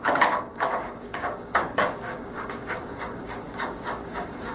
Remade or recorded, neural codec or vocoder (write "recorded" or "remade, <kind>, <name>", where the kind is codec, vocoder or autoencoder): remade, codec, DAC